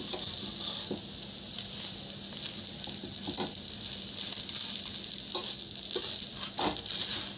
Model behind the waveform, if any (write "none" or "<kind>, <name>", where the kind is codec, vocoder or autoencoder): none